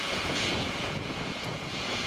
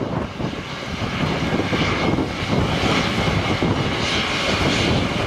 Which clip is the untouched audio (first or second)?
second